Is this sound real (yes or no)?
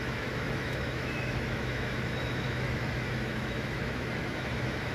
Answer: no